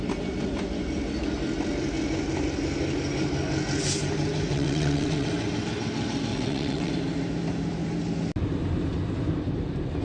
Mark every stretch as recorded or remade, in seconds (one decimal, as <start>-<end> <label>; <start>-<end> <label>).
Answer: 0.0-4.5 recorded; 4.5-5.3 remade; 5.3-6.3 recorded; 6.3-6.9 remade; 6.9-10.0 recorded

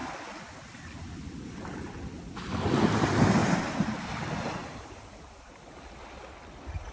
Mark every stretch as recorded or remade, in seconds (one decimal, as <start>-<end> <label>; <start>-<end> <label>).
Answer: 0.0-3.4 recorded; 3.4-4.1 remade; 4.1-4.6 recorded; 4.6-5.6 remade; 5.6-6.9 recorded

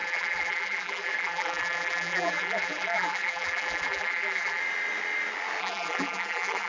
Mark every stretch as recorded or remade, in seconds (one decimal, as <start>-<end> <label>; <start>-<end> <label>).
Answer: 0.0-4.6 remade; 4.6-5.6 recorded; 5.6-6.7 remade

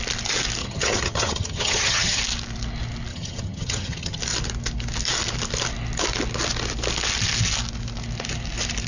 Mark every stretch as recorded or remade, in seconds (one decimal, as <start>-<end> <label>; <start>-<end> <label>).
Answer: 0.0-0.6 recorded; 0.6-2.2 remade; 2.2-3.1 recorded; 3.1-4.2 remade; 4.2-8.9 recorded

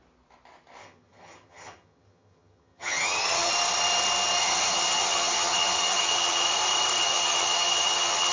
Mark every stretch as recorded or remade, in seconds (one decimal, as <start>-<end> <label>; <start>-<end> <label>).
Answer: 0.0-0.8 recorded; 0.8-3.5 remade; 3.5-4.4 recorded; 4.4-6.5 remade; 6.5-7.0 recorded; 7.0-8.3 remade

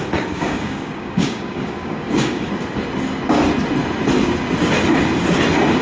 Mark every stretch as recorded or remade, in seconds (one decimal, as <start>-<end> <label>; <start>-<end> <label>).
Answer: 0.0-2.5 remade; 2.5-5.8 recorded